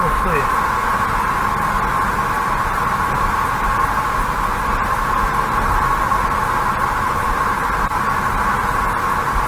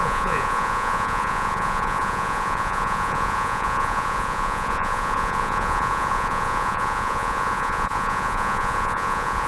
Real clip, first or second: first